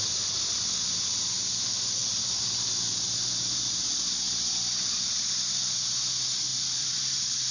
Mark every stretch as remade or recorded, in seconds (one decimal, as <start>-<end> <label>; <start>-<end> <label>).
0.0-2.0 recorded; 2.0-5.1 remade; 5.1-6.5 recorded; 6.5-7.5 remade